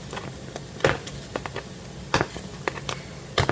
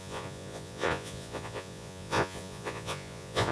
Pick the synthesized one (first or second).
second